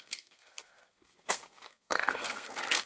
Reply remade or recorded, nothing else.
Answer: remade